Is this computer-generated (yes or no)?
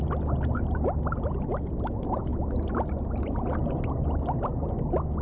no